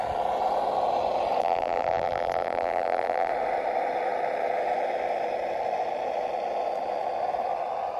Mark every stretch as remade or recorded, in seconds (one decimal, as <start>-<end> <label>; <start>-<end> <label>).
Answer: 0.0-1.4 recorded; 1.4-3.3 remade; 3.3-8.0 recorded